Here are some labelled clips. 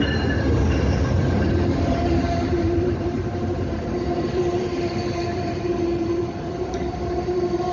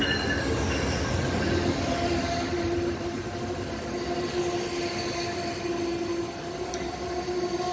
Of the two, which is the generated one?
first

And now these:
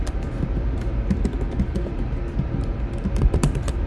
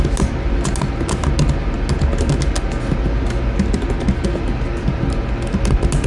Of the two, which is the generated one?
first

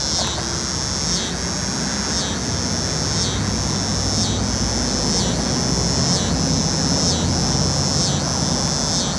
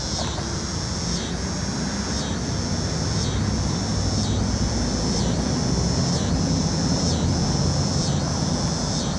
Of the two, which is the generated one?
second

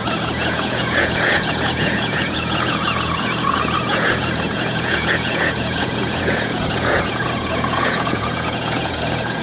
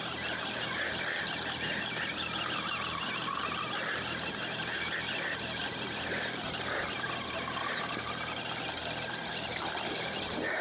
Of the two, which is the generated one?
first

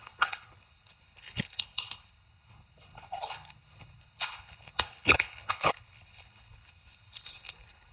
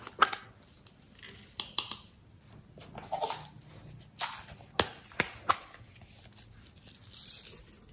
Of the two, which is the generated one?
first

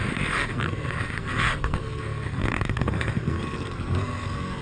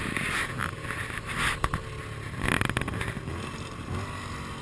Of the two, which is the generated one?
first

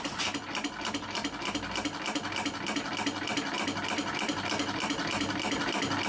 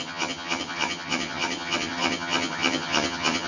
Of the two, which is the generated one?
second